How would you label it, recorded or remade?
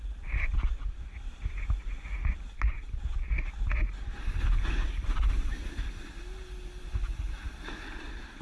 recorded